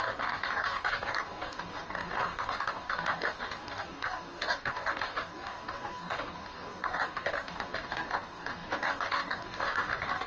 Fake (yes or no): yes